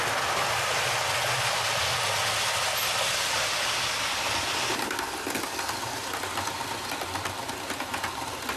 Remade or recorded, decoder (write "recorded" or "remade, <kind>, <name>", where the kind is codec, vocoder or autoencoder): recorded